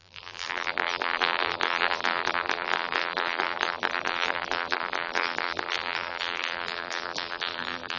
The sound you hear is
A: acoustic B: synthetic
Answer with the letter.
B